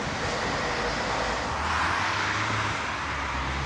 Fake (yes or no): no